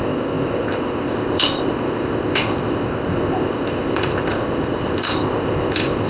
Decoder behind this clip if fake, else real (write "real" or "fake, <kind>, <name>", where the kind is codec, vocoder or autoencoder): fake, codec, ZipCodec